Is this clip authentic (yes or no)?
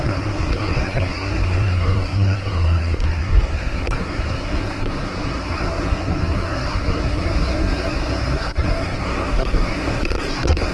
no